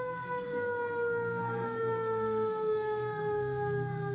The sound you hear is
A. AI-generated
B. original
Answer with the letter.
A